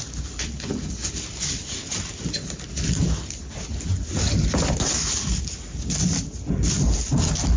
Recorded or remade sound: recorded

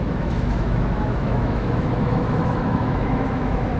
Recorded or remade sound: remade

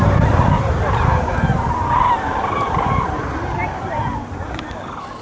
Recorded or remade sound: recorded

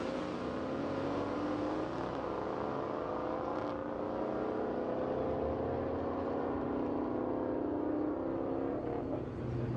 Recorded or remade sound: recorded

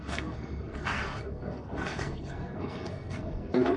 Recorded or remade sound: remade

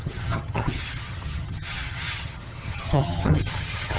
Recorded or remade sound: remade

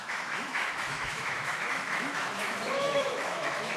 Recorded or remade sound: remade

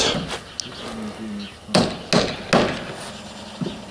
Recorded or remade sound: recorded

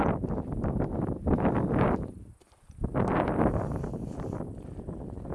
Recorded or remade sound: recorded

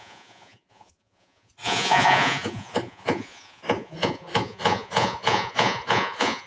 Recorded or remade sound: remade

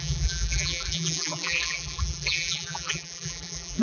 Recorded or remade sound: remade